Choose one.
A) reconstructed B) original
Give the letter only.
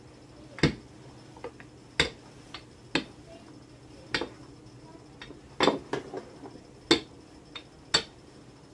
B